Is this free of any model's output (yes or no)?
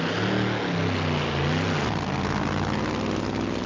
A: yes